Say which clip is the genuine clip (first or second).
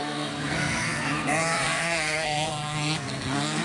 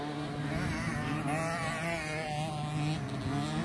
second